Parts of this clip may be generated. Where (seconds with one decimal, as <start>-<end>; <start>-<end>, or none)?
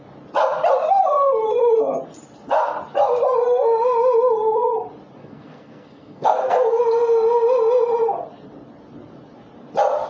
5.2-6.8